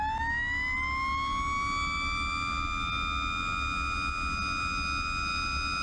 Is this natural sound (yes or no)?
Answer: yes